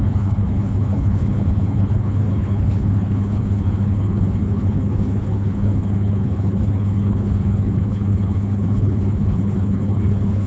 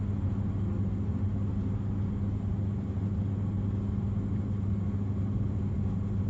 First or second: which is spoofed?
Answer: first